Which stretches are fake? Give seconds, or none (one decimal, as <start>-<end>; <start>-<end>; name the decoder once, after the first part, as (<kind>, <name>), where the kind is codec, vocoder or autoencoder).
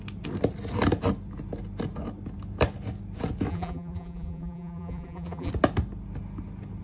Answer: 3.5-5.5 (vocoder, BigVGAN v2)